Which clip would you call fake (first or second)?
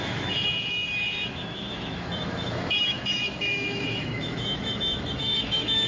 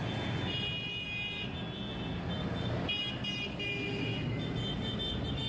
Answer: first